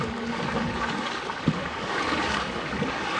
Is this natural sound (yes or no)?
no